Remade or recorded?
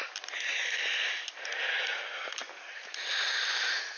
recorded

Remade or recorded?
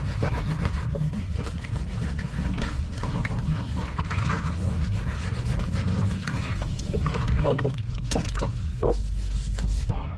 remade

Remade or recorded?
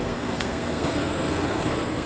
remade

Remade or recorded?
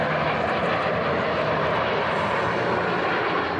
recorded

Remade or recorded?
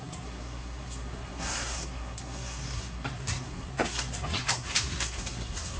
remade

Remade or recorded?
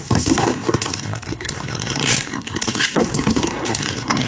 remade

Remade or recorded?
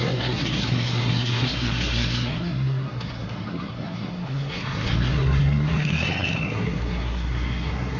remade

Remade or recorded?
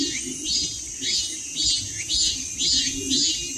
recorded